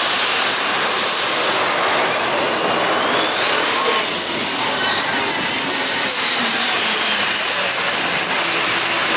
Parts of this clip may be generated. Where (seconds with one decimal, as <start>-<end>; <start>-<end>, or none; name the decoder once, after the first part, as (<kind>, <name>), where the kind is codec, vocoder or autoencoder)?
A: 6.1-7.3 (vocoder, BigVGAN v2)